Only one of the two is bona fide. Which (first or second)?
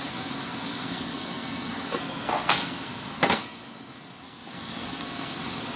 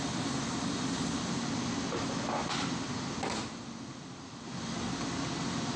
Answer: second